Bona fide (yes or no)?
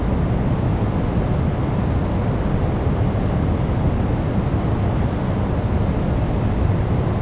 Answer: yes